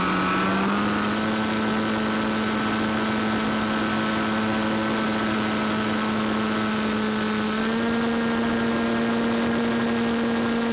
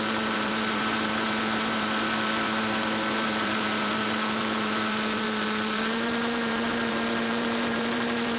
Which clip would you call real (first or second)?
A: first